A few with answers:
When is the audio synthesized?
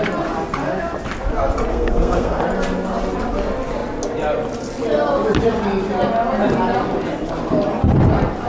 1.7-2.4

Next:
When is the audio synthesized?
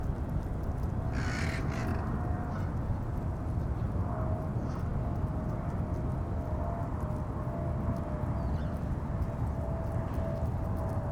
none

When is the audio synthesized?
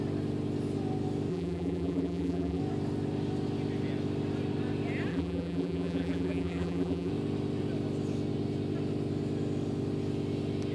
1.3-2.6; 5.1-7.1